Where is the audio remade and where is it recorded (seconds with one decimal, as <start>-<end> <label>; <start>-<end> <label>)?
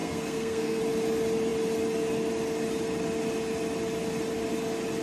0.0-0.8 remade; 0.8-5.0 recorded